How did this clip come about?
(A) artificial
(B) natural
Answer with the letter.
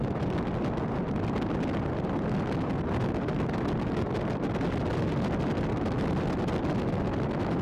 B